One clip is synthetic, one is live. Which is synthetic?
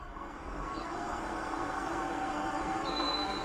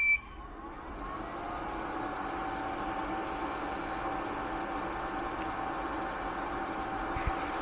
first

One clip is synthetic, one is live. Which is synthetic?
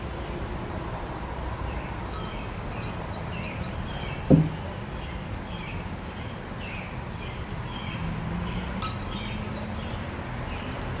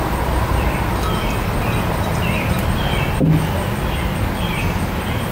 first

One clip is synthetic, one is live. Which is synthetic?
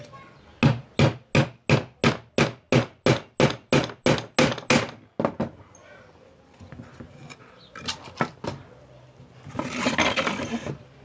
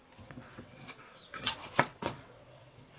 second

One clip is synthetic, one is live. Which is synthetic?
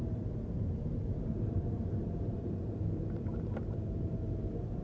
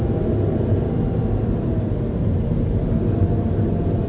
first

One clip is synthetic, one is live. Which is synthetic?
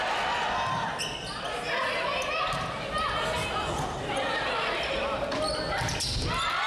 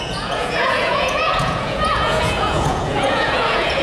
second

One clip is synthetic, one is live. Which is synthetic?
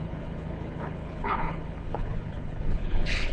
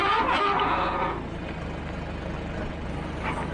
first